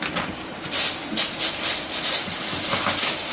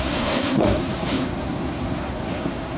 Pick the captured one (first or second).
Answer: first